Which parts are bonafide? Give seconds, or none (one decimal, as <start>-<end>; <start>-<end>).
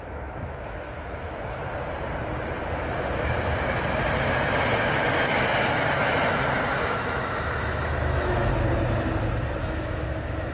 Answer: 1.6-6.8; 8.5-9.6